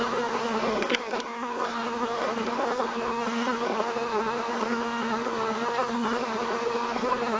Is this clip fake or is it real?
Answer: fake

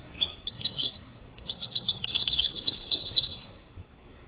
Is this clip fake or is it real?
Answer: fake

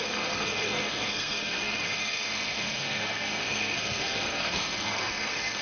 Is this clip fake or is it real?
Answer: fake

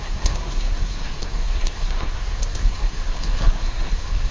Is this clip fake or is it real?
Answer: fake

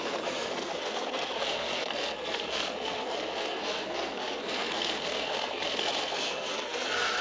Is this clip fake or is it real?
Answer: fake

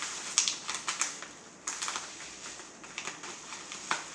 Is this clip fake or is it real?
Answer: real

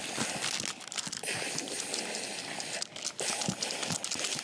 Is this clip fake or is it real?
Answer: real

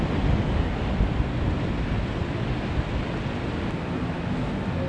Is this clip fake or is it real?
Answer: real